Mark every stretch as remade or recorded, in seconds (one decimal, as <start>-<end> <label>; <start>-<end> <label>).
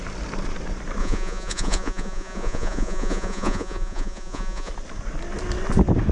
0.0-1.0 recorded; 1.0-4.7 remade; 4.7-6.1 recorded